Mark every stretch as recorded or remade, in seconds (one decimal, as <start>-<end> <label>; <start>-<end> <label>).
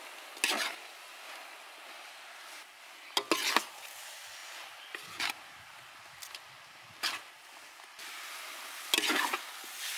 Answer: 0.0-10.0 recorded